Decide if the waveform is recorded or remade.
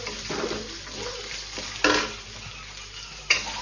recorded